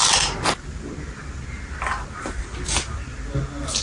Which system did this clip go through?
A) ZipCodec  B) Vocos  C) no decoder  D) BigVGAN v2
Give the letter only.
C